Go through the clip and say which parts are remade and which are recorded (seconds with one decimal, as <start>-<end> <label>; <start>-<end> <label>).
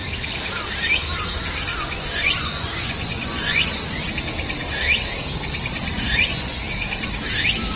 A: 0.0-1.7 recorded; 1.7-4.1 remade; 4.1-5.9 recorded; 5.9-6.6 remade; 6.6-7.8 recorded